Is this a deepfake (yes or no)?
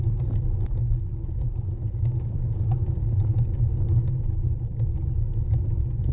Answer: no